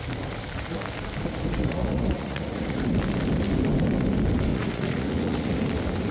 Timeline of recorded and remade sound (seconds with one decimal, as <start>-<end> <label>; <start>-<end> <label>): 0.0-1.6 recorded; 1.6-2.8 remade; 2.8-4.5 recorded; 4.5-5.5 remade; 5.5-6.1 recorded